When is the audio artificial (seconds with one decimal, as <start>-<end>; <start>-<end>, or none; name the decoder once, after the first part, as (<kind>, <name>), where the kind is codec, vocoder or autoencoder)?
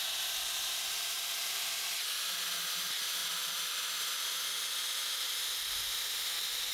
none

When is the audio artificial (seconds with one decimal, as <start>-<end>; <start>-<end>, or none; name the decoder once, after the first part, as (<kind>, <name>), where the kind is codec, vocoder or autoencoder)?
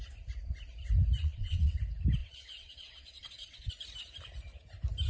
1.2-1.8 (vocoder, WaveNeXt); 2.2-3.7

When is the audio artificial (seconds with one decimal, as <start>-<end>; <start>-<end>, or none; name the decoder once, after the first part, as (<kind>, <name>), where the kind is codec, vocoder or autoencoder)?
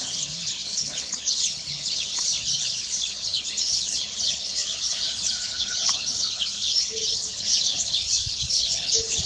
0.0-9.3 (codec, HILCodec)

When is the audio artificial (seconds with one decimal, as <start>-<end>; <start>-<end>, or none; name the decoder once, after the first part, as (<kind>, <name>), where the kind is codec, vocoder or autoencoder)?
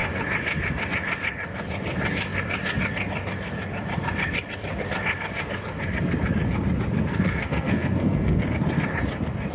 7.1-8.5 (codec, SNAC)